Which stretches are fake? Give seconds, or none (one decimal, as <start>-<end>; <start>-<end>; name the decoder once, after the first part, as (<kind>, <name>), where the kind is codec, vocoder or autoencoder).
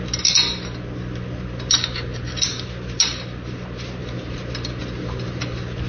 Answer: none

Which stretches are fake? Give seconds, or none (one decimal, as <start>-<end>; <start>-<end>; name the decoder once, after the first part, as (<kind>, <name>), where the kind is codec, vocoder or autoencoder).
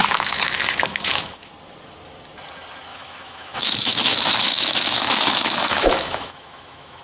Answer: 0.0-1.5 (autoencoder, DAC-VAE); 2.9-7.0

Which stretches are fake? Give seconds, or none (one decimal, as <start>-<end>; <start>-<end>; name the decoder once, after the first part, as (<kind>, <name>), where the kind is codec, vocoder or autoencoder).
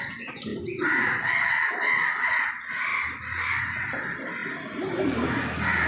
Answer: 0.5-1.4 (vocoder, BigVGAN v2); 2.9-3.6; 4.4-5.3